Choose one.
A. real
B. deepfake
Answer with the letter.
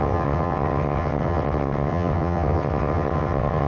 B